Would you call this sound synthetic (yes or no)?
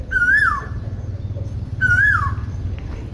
yes